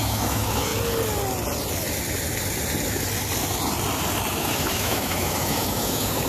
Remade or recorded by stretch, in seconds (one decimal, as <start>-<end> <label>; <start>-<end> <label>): 0.0-0.7 remade; 0.7-4.3 recorded; 4.3-6.3 remade